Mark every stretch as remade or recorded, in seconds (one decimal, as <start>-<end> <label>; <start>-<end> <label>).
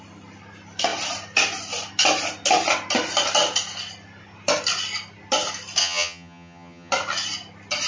0.0-5.8 recorded; 5.8-6.9 remade; 6.9-7.9 recorded